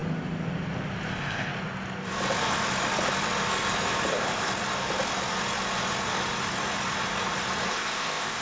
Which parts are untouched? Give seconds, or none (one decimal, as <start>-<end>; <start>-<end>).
0.0-1.1; 1.5-4.1; 4.5-7.7